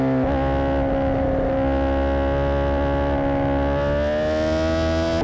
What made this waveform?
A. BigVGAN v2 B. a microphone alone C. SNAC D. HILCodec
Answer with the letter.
B